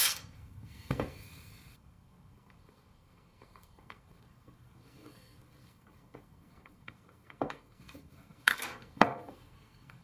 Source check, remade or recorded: remade